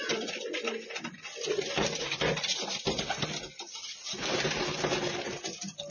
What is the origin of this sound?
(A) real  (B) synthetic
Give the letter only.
A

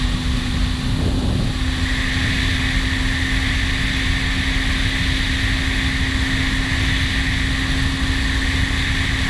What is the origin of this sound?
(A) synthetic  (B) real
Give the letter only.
B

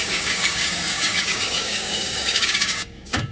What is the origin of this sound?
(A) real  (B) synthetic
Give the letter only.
B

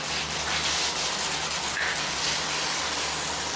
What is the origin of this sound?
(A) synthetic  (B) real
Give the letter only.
B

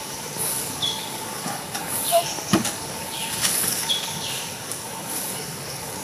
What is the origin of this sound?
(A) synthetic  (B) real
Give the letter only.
A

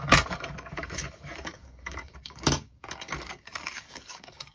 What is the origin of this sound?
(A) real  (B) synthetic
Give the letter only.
B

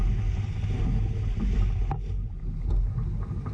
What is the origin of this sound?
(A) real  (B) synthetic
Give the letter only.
A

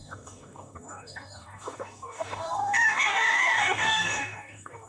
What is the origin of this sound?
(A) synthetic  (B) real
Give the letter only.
A